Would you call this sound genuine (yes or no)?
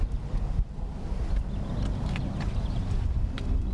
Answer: yes